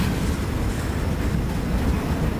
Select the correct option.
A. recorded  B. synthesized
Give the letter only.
A